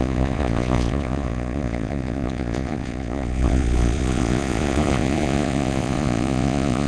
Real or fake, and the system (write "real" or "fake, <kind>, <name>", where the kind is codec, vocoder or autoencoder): fake, vocoder, Vocos